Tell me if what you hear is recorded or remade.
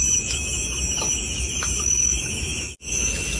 remade